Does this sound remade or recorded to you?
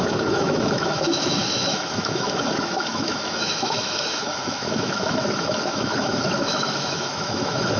remade